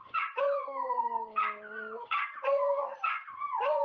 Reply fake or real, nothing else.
fake